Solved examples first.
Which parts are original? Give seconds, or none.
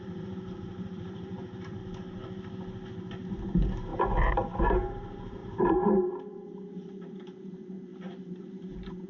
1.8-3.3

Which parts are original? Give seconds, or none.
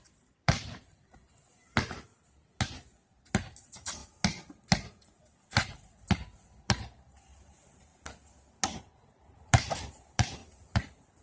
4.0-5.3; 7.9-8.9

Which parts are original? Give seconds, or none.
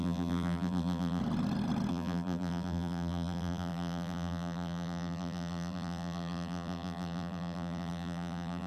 1.2-1.9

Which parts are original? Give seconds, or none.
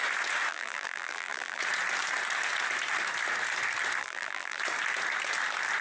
0.0-0.5; 1.6-4.0; 4.6-5.8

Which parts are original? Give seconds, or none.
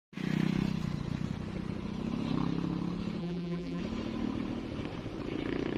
0.0-3.2; 3.8-5.8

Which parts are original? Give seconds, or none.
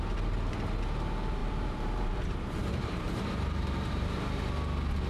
0.0-1.4; 4.5-5.1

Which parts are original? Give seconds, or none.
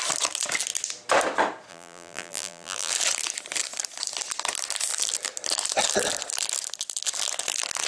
0.0-1.7; 2.9-7.9